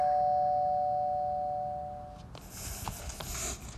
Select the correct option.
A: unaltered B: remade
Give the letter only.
A